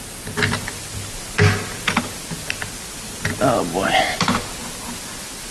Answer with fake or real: real